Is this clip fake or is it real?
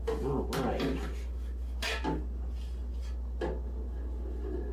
real